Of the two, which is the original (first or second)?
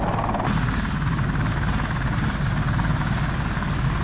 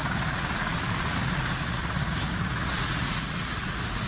first